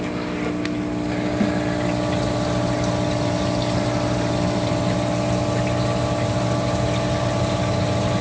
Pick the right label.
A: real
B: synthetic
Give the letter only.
A